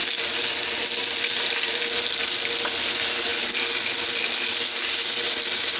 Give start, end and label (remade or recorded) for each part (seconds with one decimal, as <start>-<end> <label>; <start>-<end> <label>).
0.0-5.8 recorded